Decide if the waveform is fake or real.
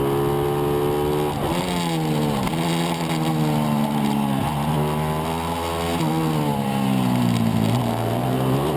real